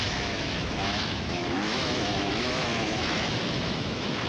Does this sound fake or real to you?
fake